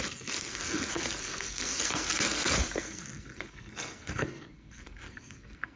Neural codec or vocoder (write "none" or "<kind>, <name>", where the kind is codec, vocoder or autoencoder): codec, SNAC